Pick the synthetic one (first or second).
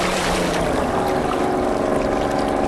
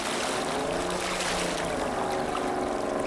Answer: first